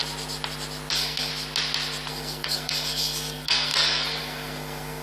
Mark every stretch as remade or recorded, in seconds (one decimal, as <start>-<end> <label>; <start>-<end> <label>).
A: 0.0-0.9 recorded; 0.9-1.3 remade; 1.3-2.1 recorded; 2.1-5.0 remade